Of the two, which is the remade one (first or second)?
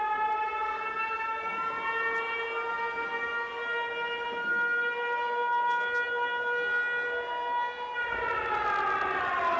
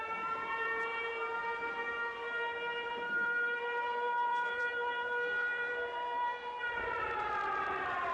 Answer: second